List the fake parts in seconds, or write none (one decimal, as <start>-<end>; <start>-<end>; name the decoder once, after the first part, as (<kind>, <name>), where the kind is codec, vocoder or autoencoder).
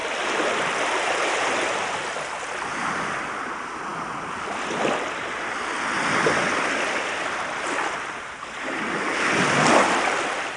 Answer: none